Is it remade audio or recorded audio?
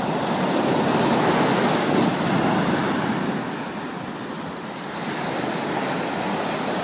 recorded